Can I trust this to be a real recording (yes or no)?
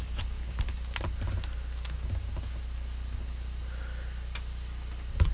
yes